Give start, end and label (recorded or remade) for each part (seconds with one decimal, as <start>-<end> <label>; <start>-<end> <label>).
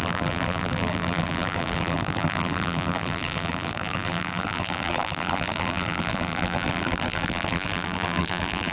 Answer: 0.0-8.7 remade